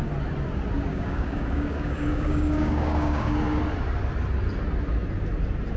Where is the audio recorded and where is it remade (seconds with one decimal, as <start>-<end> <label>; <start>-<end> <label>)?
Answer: 0.0-0.9 recorded; 0.9-3.6 remade; 3.6-5.8 recorded